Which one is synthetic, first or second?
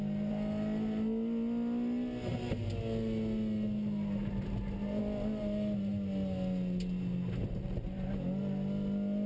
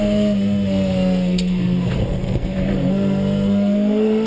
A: second